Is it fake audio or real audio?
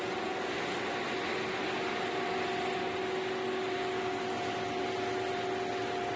real